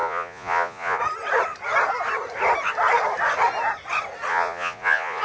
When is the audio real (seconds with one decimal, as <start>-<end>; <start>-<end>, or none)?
1.0-4.3